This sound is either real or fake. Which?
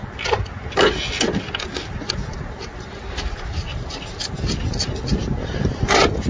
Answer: real